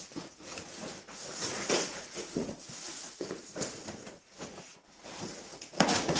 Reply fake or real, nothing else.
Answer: fake